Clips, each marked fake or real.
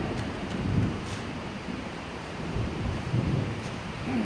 fake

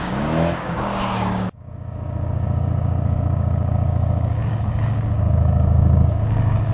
fake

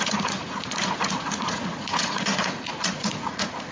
fake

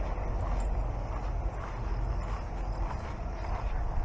real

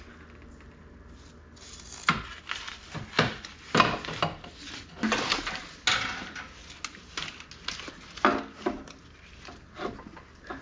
real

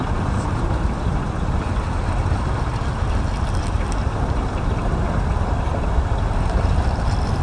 real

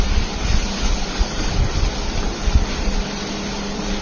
real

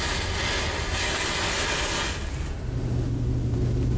real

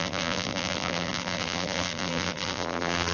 fake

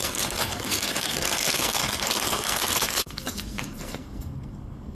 fake